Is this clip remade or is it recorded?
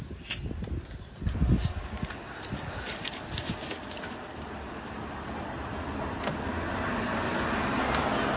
recorded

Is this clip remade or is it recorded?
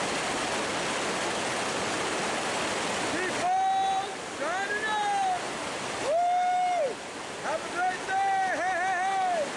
recorded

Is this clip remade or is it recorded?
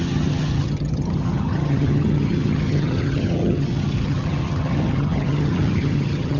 remade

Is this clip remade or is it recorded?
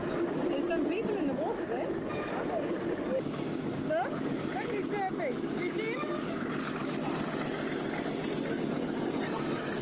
recorded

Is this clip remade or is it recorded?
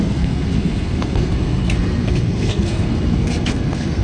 remade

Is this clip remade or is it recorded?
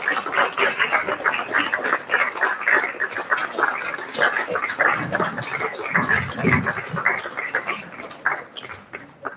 recorded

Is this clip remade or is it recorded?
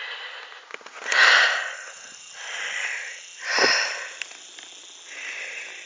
recorded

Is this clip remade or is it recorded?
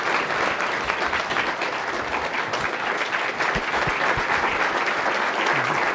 recorded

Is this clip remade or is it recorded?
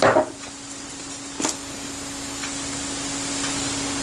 recorded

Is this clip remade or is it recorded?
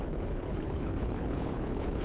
remade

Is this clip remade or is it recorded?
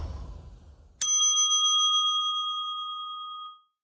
recorded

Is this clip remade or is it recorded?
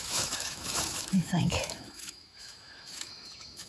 remade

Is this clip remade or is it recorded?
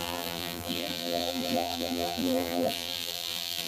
remade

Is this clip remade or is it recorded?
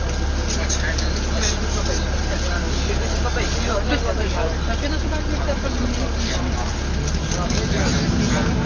recorded